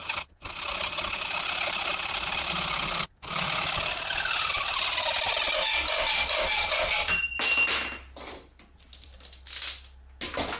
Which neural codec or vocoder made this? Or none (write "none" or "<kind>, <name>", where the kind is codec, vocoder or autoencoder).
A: none